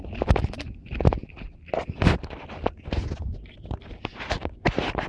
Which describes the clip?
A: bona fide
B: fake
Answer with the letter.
A